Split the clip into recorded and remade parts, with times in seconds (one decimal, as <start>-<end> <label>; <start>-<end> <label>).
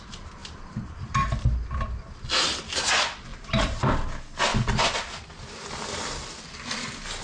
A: 0.0-3.3 recorded; 3.3-3.9 remade; 3.9-7.2 recorded